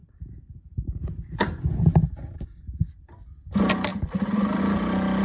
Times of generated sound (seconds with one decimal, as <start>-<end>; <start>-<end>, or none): 0.0-1.0; 3.9-4.6